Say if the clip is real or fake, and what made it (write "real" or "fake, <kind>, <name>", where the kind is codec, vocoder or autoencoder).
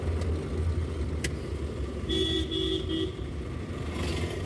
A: real